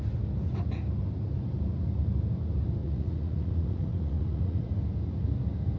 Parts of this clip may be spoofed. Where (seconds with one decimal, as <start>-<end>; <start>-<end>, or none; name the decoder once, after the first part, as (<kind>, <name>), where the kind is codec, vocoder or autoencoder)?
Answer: 2.8-4.7 (vocoder, Vocos)